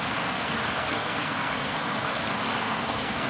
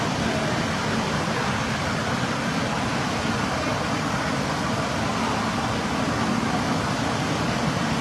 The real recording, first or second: second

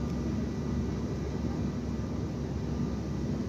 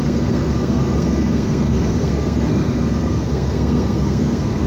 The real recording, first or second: first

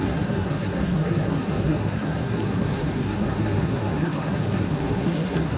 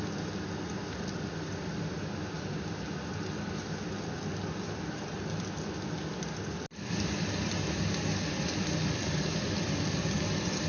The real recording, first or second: second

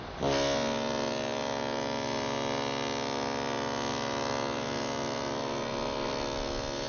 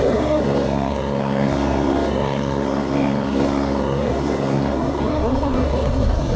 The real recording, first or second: first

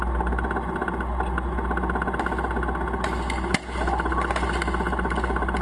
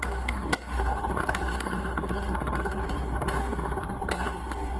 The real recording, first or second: first